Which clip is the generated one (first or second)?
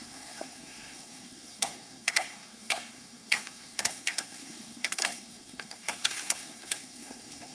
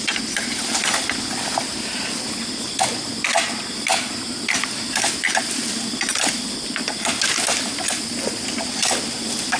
first